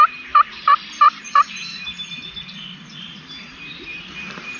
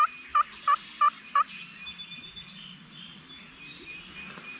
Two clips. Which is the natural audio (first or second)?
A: second